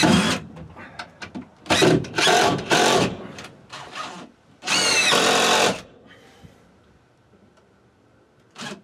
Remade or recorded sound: remade